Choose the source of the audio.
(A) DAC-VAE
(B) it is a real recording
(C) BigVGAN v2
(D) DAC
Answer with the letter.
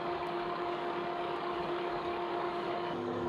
D